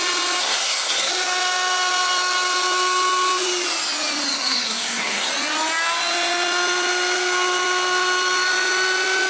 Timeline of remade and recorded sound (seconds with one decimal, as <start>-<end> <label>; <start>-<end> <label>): 0.0-0.4 recorded; 0.4-1.1 remade; 1.1-4.3 recorded; 4.3-5.3 remade; 5.3-9.3 recorded